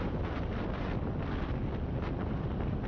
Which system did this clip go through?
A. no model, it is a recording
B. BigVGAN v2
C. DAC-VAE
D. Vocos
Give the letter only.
A